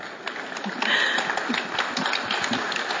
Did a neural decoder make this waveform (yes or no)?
no